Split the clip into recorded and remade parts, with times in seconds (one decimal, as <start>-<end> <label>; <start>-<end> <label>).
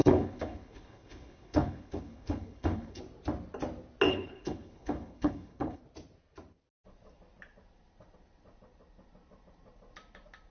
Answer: 0.0-3.0 remade; 3.0-4.1 recorded; 4.1-5.8 remade; 5.8-10.5 recorded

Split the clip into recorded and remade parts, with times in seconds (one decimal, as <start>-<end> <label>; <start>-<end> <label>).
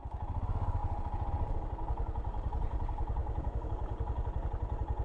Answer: 0.0-3.2 recorded; 3.2-3.7 remade; 3.7-5.0 recorded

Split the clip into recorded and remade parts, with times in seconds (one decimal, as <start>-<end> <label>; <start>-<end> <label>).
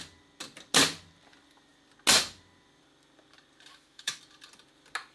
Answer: 0.0-3.7 recorded; 3.7-4.2 remade; 4.2-5.1 recorded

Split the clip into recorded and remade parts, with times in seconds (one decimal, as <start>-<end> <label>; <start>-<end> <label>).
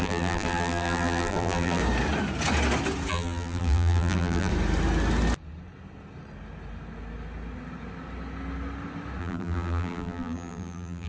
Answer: 0.0-1.8 remade; 1.8-3.1 recorded; 3.1-4.5 remade; 4.5-9.2 recorded; 9.2-11.1 remade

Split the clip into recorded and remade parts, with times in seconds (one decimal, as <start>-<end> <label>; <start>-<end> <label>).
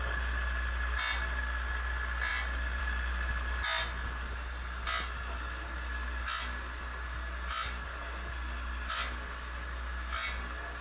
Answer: 0.0-10.8 recorded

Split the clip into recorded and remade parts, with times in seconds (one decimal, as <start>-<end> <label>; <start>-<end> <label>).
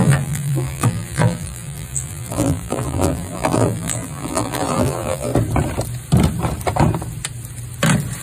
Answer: 0.0-5.3 remade; 5.3-8.2 recorded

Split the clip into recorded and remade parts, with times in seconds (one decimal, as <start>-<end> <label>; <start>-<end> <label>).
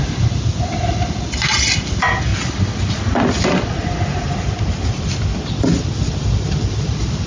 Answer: 0.0-7.3 recorded